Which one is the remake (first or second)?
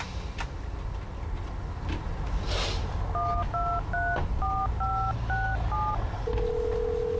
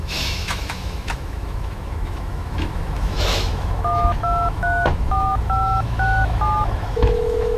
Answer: second